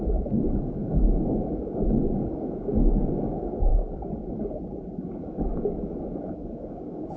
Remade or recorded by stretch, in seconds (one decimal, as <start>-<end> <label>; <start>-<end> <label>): 0.0-3.7 remade; 3.7-5.2 recorded; 5.2-7.2 remade

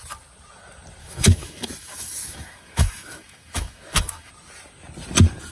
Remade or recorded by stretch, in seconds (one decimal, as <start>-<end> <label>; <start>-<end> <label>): 0.0-1.0 recorded; 1.0-4.3 remade; 4.3-5.5 recorded

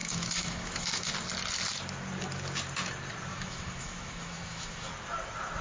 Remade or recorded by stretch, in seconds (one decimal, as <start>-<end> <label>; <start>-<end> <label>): 0.0-1.1 remade; 1.1-3.3 recorded; 3.3-4.9 remade; 4.9-5.6 recorded

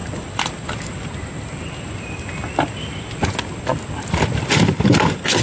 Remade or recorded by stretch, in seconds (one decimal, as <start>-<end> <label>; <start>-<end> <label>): 0.0-5.4 recorded

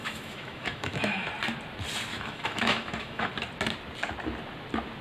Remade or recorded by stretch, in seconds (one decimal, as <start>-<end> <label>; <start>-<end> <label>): 0.0-1.3 remade; 1.3-2.1 recorded; 2.1-3.3 remade; 3.3-5.0 recorded

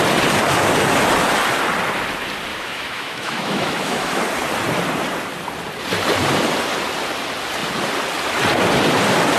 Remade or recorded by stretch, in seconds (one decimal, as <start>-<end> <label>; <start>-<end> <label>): 0.0-2.5 recorded; 2.5-4.2 remade; 4.2-9.4 recorded

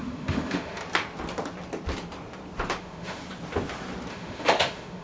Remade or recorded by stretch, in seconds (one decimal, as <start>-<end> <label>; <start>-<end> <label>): 0.0-0.8 remade; 0.8-2.8 recorded; 2.8-3.2 remade; 3.2-4.1 recorded; 4.1-5.0 remade